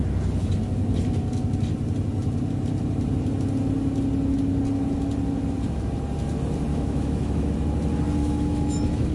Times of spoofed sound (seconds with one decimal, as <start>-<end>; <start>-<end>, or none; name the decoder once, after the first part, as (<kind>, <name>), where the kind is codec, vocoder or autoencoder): 6.7-7.5 (autoencoder, DAC-VAE); 8.2-9.1